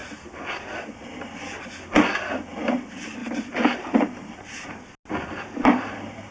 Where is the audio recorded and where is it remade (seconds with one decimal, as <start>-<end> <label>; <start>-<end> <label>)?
0.0-3.2 recorded; 3.2-4.7 remade; 4.7-6.3 recorded